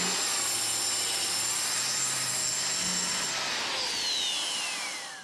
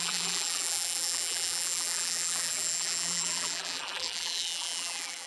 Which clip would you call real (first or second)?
first